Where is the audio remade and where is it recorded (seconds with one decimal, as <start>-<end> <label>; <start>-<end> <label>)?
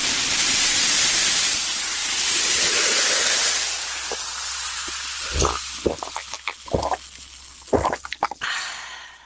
0.0-9.3 recorded